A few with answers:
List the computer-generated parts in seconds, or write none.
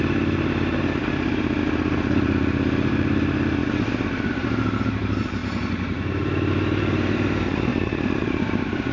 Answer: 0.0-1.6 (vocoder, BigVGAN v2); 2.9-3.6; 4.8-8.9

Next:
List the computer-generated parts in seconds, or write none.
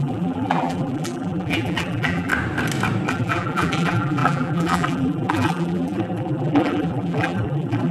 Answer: 0.0-2.3 (vocoder, BigVGAN v2); 3.1-7.9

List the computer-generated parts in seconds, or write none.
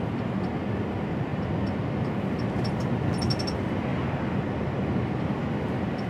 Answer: none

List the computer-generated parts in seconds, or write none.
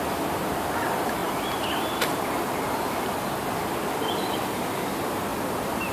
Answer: 0.0-5.9 (vocoder, BigVGAN v2)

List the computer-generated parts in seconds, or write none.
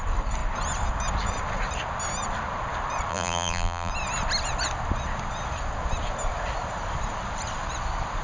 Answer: 3.1-3.9 (vocoder, BigVGAN v2)